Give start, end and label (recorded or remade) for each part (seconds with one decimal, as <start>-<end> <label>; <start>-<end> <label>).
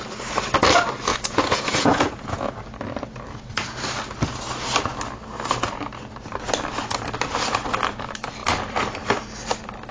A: 0.0-1.1 recorded; 1.1-2.6 remade; 2.6-9.9 recorded